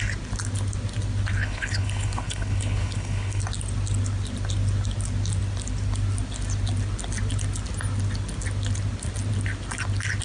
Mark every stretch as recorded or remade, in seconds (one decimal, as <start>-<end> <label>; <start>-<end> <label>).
0.0-1.4 recorded; 1.4-3.4 remade; 3.4-10.2 recorded